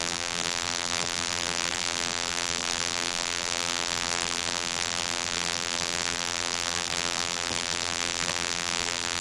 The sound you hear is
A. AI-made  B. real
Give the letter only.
A